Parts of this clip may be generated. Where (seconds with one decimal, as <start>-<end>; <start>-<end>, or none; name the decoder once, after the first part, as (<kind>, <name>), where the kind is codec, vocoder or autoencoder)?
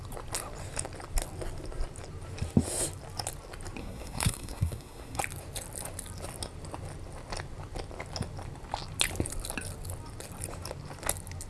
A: 3.8-5.2 (codec, SNAC)